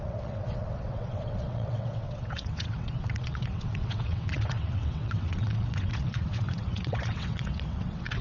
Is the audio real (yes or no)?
no